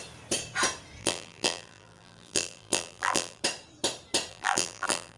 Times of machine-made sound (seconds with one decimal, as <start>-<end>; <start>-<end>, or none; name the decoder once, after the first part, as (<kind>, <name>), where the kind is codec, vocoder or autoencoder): 1.0-3.4 (vocoder, BigVGAN v2); 4.3-5.2